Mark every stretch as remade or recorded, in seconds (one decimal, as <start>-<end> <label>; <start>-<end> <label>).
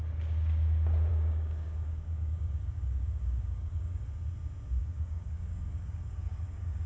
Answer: 0.0-1.1 recorded; 1.1-4.1 remade; 4.1-4.8 recorded; 4.8-6.9 remade